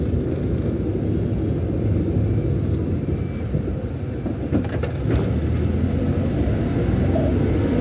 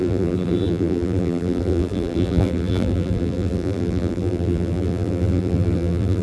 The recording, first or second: first